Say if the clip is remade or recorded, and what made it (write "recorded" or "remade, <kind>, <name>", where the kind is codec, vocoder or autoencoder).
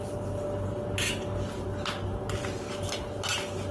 recorded